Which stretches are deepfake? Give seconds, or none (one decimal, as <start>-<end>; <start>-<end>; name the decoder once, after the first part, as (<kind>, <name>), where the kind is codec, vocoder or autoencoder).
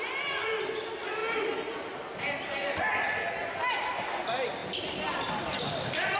none